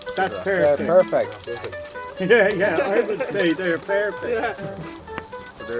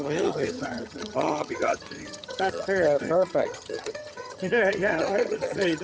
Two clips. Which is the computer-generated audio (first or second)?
second